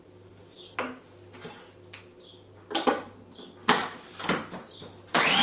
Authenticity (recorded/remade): recorded